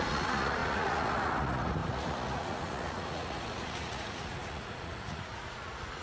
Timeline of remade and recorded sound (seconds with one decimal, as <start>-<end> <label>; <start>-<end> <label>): 0.0-6.0 remade